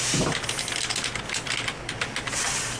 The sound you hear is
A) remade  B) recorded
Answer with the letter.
B